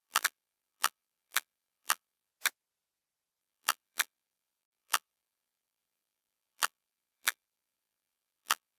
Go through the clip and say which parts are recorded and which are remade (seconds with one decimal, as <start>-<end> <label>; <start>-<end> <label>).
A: 0.0-2.3 remade; 2.3-3.4 recorded; 3.4-8.8 remade

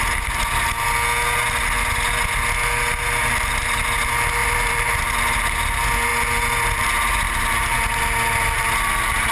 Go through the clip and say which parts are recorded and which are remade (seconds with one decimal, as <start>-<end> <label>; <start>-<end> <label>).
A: 0.0-4.4 recorded; 4.4-4.9 remade; 4.9-9.3 recorded

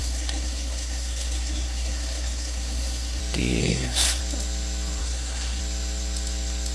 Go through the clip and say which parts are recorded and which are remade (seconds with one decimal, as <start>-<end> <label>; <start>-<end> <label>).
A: 0.0-3.2 remade; 3.2-3.6 recorded; 3.6-4.2 remade; 4.2-5.0 recorded; 5.0-5.6 remade; 5.6-6.7 recorded

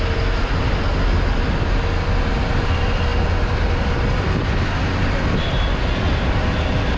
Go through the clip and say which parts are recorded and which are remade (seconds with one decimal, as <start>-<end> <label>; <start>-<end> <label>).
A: 0.0-7.0 recorded

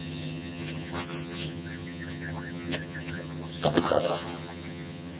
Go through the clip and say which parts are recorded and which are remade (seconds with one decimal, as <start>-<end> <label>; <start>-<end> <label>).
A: 0.0-5.2 remade